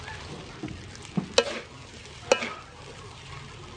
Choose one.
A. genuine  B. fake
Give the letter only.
A